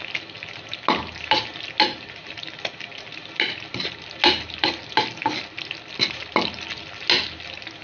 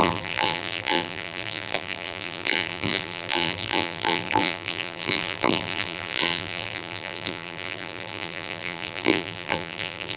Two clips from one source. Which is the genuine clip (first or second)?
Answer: first